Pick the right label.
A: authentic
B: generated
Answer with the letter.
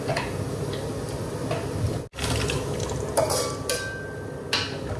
A